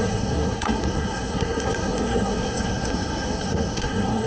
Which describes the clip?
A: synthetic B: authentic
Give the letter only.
A